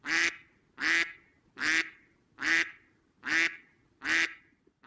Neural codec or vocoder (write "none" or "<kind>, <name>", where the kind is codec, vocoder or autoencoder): none